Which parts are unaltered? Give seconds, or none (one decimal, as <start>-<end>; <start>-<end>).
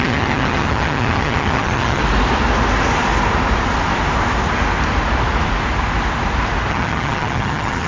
2.0-6.7